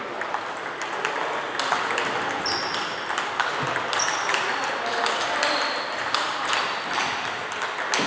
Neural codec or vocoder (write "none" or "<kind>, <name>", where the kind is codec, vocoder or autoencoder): none